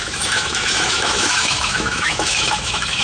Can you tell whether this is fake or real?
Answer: fake